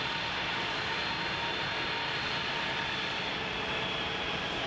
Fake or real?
real